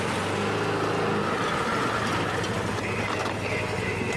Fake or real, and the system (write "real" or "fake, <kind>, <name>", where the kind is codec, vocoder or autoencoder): real